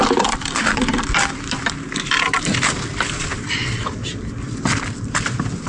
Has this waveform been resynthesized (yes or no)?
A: yes